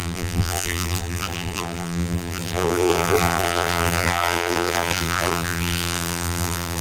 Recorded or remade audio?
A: remade